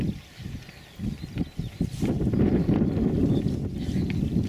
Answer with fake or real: real